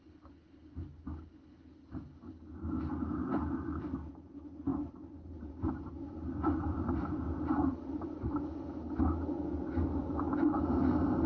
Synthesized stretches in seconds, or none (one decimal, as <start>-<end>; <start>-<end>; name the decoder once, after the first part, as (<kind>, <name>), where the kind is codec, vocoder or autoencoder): 4.7-8.4 (vocoder, BigVGAN v2)